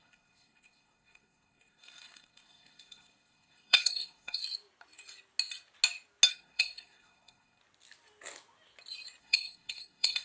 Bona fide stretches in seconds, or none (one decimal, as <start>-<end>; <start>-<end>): 4.4-6.3; 7.6-9.2